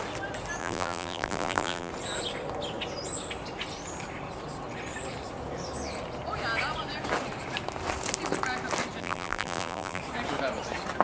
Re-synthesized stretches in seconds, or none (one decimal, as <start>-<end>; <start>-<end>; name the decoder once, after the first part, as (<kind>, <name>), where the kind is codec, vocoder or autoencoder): 0.6-1.9 (vocoder, BigVGAN v2); 9.0-10.0